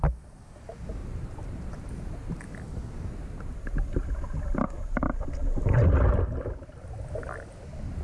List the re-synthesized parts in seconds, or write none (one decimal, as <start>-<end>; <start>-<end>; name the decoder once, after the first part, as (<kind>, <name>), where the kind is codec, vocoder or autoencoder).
1.0-1.9 (vocoder, BigVGAN v2)